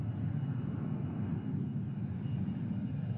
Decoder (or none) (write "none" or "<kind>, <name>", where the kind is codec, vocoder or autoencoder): none